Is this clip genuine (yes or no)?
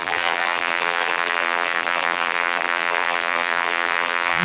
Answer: no